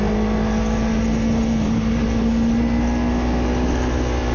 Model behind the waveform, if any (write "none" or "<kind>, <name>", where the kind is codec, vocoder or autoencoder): none